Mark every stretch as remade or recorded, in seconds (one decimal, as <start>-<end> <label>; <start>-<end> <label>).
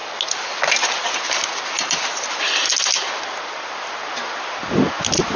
0.0-5.4 recorded